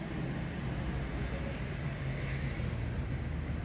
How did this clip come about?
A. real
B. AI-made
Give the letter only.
A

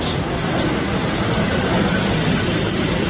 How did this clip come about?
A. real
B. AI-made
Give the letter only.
A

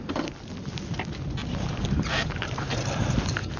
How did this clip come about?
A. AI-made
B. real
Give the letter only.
B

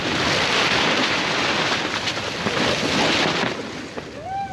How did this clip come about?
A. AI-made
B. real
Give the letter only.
B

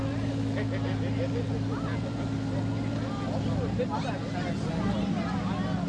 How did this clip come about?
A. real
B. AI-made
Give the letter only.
A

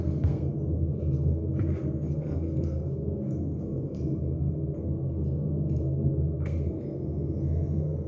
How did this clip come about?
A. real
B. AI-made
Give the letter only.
B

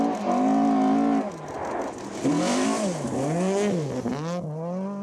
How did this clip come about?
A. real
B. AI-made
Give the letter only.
A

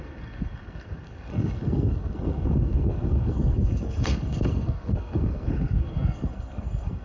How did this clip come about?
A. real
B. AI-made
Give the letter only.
B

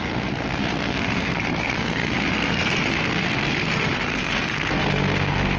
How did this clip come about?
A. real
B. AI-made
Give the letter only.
B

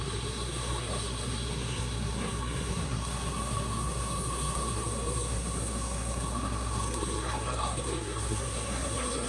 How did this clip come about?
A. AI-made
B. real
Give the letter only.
A